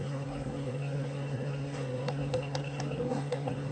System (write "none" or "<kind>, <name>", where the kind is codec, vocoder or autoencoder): codec, SNAC